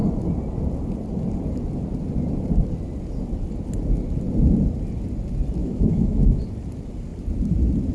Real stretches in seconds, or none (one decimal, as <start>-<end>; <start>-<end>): 0.0-5.6; 6.4-7.9